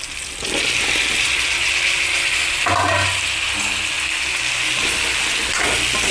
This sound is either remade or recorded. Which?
recorded